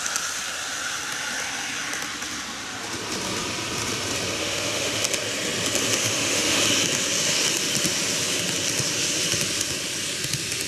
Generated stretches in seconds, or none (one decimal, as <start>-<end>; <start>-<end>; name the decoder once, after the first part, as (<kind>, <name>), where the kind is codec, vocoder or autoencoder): 4.4-5.0 (autoencoder, DAC-VAE); 6.0-6.6